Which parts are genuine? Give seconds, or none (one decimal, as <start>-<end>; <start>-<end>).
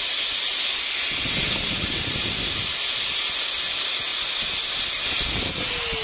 0.0-6.0